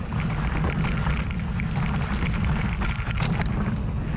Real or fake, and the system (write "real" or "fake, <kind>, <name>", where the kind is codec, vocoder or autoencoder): real